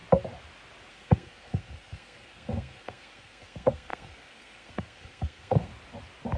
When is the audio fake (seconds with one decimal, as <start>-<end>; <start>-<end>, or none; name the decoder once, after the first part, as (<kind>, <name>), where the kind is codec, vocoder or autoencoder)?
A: 0.9-5.7 (codec, SNAC)